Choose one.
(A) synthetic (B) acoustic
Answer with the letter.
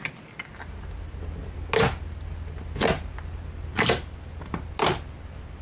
B